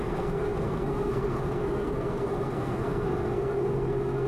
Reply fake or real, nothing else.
fake